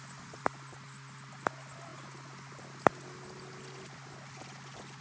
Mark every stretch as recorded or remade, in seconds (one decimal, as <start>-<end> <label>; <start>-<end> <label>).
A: 0.0-5.0 recorded